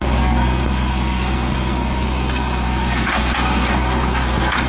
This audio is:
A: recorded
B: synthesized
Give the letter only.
B